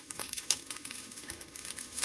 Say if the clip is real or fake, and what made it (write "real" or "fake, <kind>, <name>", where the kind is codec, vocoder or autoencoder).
fake, autoencoder, DAC-VAE